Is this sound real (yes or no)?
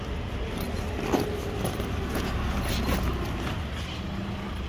yes